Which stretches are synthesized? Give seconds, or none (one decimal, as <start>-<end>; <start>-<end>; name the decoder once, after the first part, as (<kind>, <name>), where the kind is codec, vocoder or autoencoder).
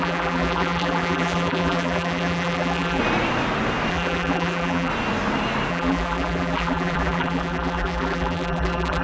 0.0-3.0 (vocoder, BigVGAN v2); 3.9-4.9; 5.7-9.0